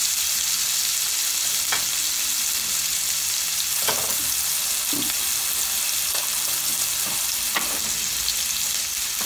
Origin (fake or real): real